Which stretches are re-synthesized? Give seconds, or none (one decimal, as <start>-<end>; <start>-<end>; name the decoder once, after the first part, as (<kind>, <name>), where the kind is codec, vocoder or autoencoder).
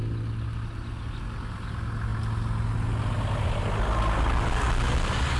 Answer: none